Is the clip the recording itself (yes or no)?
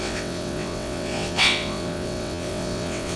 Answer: no